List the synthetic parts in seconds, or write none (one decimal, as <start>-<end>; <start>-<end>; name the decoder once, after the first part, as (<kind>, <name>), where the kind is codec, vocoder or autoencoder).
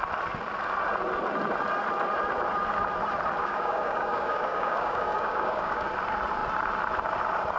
3.4-5.9 (codec, DAC)